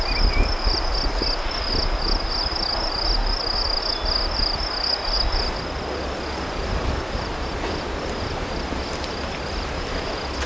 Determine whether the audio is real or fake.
real